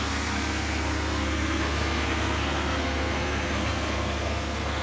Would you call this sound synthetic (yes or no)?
yes